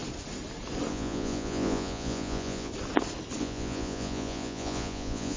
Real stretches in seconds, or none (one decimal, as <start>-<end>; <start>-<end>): 0.0-0.9; 2.7-3.4